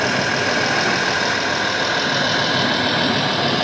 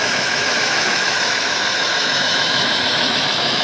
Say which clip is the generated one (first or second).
second